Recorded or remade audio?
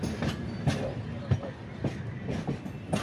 recorded